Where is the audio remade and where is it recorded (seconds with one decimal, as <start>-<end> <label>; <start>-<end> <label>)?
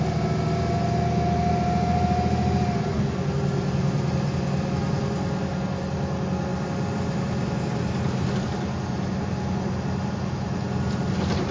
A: 0.0-11.5 recorded